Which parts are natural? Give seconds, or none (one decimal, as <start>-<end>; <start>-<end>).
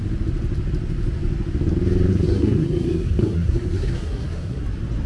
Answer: 0.0-2.1; 4.6-5.1